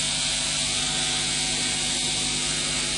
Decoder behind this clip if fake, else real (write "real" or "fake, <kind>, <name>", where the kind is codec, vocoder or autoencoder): real